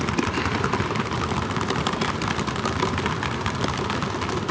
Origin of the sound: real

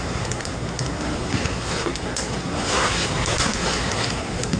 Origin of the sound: fake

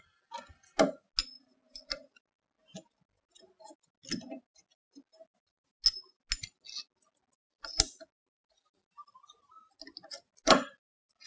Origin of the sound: real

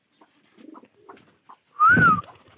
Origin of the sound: real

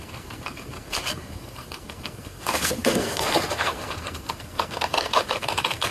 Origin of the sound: fake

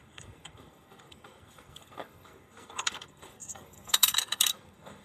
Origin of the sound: fake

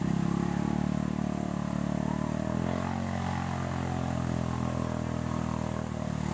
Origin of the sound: real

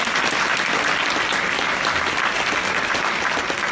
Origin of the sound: real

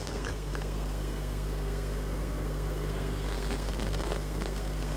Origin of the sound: fake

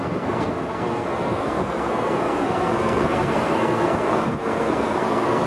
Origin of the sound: fake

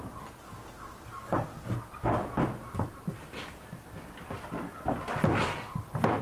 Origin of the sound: real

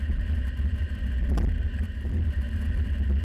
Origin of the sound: real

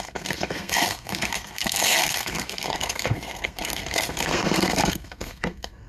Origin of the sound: fake